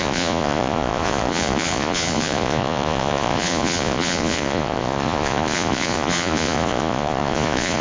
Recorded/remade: remade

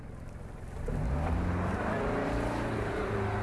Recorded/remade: recorded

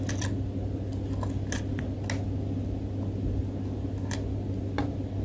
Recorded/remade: recorded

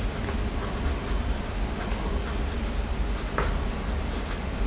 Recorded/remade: recorded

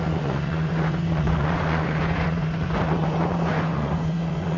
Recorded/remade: remade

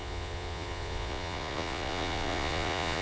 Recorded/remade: remade